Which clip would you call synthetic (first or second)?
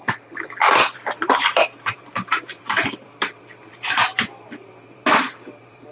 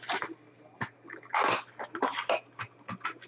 first